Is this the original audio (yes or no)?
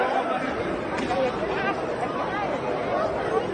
yes